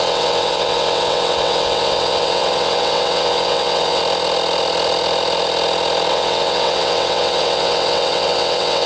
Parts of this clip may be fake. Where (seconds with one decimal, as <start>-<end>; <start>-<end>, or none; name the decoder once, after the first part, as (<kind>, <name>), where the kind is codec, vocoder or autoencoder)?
0.0-4.0 (vocoder, WaveNeXt); 6.1-8.9